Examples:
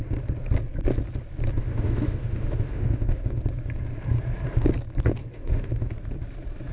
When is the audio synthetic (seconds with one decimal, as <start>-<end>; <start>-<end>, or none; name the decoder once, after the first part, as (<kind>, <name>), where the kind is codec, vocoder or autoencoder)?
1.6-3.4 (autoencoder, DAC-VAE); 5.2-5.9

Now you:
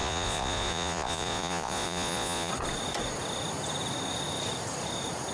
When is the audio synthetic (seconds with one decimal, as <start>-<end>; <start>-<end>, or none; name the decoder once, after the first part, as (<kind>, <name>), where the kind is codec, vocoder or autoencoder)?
0.0-2.5 (vocoder, Vocos)

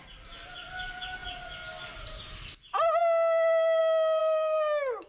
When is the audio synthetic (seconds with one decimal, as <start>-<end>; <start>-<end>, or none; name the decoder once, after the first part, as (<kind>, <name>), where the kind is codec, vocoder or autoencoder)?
4.2-5.1 (codec, DAC)

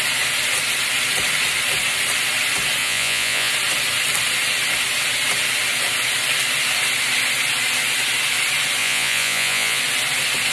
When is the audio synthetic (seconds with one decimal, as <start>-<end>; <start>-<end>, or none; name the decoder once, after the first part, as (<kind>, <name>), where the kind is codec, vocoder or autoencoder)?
2.8-3.5 (vocoder, Vocos); 8.8-9.8

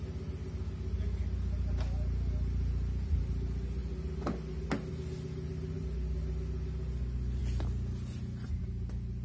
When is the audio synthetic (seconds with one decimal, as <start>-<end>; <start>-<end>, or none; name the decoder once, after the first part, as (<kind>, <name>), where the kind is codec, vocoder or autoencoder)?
none

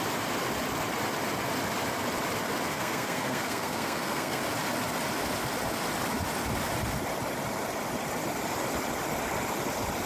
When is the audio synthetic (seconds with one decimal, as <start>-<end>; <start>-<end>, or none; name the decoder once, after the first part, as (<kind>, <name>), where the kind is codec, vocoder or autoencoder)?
2.7-4.4 (codec, SNAC)